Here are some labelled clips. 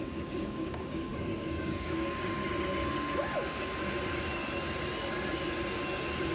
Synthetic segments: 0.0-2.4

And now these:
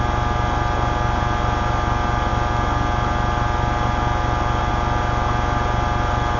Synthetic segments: none

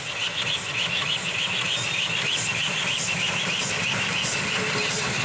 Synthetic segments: 1.0-4.1

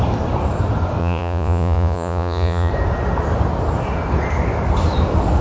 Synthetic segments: 1.0-2.7

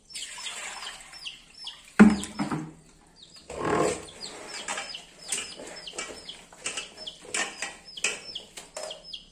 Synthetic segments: none

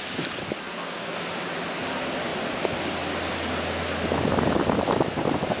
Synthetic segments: 0.6-1.2

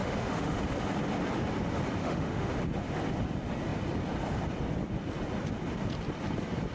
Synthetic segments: 0.0-0.6; 2.0-2.5

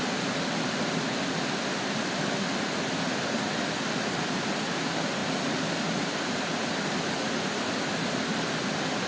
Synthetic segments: none